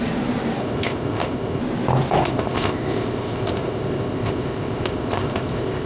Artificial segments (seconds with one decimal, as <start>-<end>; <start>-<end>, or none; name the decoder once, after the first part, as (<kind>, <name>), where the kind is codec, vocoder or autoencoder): 0.6-1.6 (codec, ZipCodec); 2.2-5.9